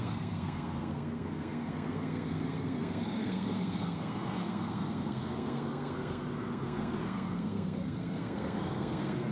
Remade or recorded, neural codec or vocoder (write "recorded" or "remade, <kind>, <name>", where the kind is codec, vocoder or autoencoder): remade, codec, SNAC